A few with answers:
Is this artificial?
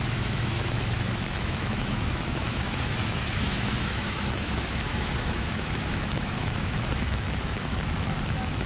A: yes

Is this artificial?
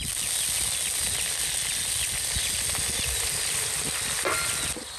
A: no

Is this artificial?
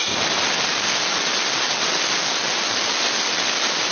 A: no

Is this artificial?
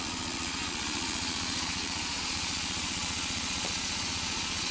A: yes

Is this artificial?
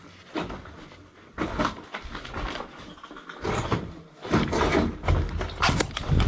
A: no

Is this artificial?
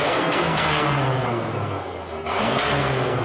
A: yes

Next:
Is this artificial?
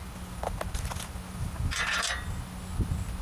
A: no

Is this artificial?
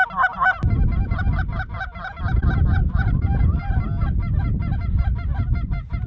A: no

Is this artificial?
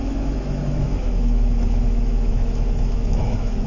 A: yes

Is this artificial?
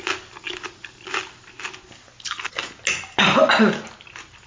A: no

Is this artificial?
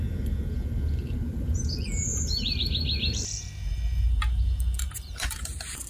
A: yes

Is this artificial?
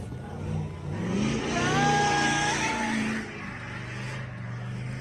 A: no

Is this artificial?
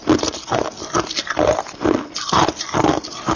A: no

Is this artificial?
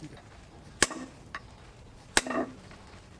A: no